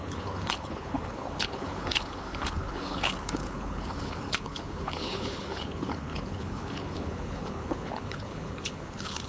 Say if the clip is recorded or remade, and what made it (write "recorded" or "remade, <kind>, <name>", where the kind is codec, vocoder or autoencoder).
remade, codec, HILCodec